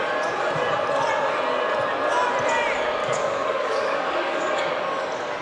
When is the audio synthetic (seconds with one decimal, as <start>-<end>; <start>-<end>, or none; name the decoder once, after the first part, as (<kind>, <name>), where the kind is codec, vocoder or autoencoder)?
3.0-4.6 (codec, DAC)